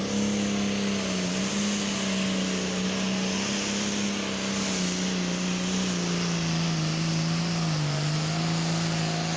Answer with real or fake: real